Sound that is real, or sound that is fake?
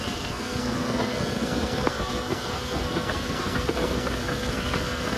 fake